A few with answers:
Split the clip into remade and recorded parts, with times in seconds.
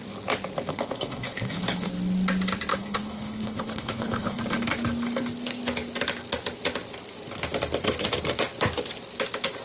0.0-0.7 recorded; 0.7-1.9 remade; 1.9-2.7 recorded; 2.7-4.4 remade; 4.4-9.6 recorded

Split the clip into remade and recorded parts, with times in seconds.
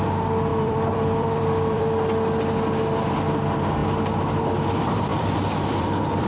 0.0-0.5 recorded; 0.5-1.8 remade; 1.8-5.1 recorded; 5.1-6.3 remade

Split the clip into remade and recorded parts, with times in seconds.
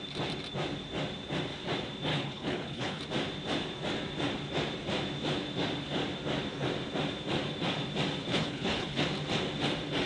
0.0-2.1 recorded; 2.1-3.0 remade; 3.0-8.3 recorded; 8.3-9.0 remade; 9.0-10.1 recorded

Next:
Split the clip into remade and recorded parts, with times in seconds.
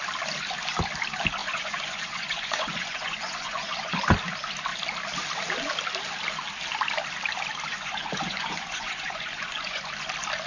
0.0-1.4 recorded; 1.4-4.0 remade; 4.0-7.7 recorded; 7.7-9.9 remade; 9.9-10.5 recorded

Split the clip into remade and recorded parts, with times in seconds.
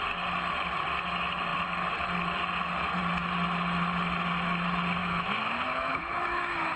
0.0-5.0 recorded; 5.0-6.8 remade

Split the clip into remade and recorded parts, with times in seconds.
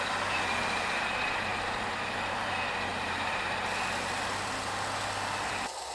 0.0-2.9 recorded; 2.9-3.4 remade; 3.4-5.9 recorded